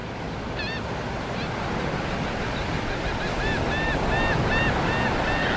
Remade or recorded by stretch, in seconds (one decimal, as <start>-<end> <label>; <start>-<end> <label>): 0.0-5.6 recorded